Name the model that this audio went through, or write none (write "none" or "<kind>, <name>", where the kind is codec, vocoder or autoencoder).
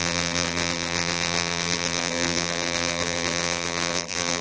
vocoder, BigVGAN v2